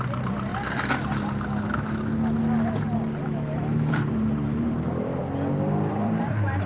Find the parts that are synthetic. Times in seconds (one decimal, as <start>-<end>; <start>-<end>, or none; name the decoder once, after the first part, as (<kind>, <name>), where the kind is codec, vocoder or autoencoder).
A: 0.0-0.5 (vocoder, BigVGAN v2); 3.9-5.2; 5.9-6.7